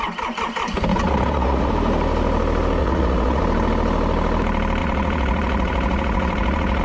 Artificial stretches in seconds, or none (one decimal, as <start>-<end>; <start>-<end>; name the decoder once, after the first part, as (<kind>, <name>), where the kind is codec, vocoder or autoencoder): 0.9-1.7 (vocoder, Vocos); 2.8-3.4; 4.8-6.8